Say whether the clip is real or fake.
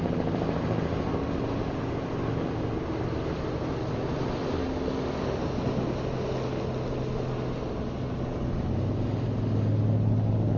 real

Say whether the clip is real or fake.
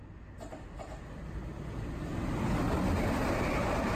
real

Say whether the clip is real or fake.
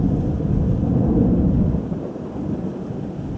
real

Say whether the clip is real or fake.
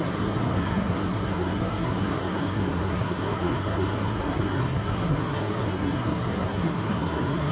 fake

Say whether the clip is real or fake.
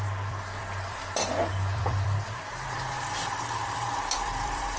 fake